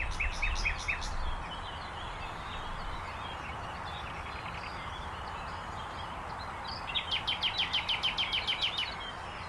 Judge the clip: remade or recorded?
recorded